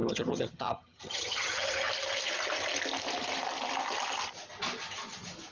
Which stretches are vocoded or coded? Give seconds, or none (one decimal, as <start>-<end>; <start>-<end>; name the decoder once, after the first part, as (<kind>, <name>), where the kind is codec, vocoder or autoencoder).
0.0-1.9 (vocoder, HiFi-GAN)